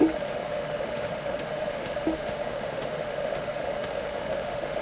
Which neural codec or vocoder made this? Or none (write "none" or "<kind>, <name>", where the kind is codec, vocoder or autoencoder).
autoencoder, DAC-VAE